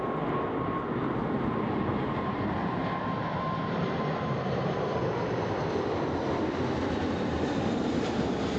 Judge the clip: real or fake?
real